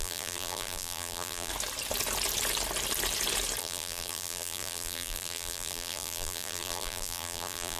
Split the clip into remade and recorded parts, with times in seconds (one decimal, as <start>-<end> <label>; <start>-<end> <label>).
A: 0.0-1.5 remade; 1.5-3.6 recorded; 3.6-7.8 remade